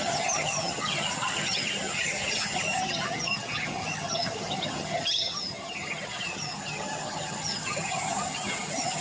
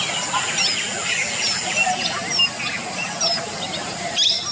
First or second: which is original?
second